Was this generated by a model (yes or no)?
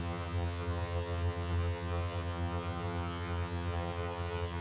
yes